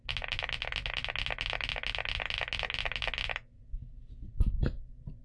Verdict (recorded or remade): recorded